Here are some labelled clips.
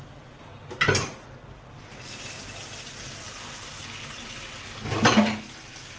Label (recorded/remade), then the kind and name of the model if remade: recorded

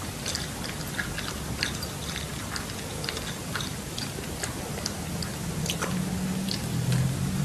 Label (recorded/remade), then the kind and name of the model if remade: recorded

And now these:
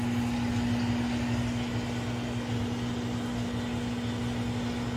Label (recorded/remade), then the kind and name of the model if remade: recorded